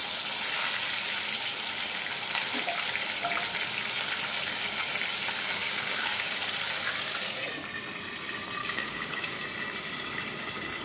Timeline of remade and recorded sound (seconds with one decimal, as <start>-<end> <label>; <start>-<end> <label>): 0.0-5.6 recorded; 5.6-6.4 remade; 6.4-8.6 recorded; 8.6-9.4 remade; 9.4-10.8 recorded